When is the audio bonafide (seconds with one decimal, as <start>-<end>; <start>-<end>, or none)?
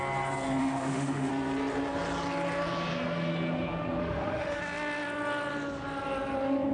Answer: 0.0-0.6; 1.3-4.0; 4.6-6.7